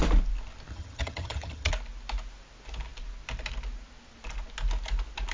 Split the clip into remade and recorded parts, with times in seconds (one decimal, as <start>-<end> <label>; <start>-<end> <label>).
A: 0.0-0.7 recorded; 0.7-1.7 remade; 1.7-5.3 recorded